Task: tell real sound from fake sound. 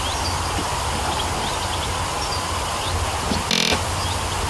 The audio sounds real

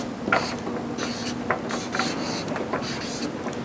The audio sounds real